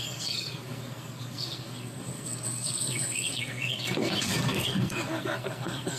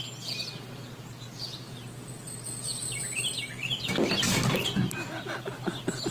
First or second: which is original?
second